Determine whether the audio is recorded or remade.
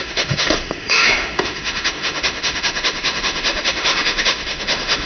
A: remade